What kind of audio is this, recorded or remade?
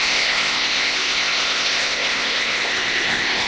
remade